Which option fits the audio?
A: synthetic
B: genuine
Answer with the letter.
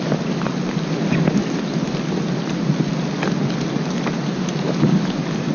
B